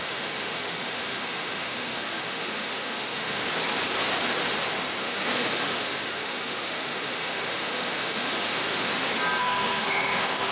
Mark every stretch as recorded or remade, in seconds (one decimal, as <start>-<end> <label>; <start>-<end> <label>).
0.0-3.4 remade; 3.4-5.0 recorded; 5.0-8.9 remade; 8.9-9.4 recorded; 9.4-10.5 remade